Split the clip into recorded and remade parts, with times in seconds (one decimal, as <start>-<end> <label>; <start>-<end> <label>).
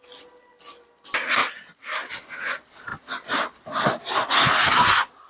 0.0-5.3 recorded